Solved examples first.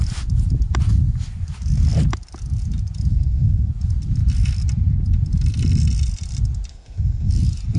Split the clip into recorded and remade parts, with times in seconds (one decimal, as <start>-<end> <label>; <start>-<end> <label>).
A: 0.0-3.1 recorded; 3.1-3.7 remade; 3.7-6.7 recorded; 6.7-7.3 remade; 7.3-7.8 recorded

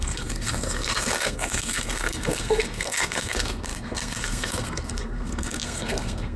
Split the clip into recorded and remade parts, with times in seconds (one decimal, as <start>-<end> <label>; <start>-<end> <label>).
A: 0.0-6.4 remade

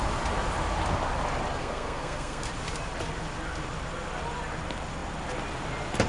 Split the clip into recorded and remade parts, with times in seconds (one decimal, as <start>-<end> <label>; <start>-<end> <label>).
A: 0.0-1.6 recorded; 1.6-2.5 remade; 2.5-6.1 recorded

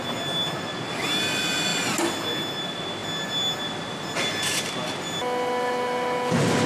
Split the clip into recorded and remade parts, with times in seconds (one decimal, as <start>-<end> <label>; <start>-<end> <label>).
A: 0.0-6.7 recorded

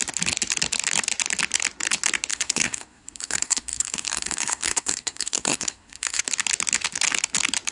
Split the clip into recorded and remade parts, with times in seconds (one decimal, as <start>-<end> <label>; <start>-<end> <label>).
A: 0.0-2.3 recorded; 2.3-6.2 remade; 6.2-7.7 recorded